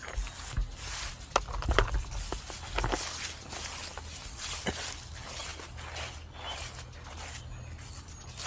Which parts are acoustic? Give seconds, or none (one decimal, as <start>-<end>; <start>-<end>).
0.0-8.5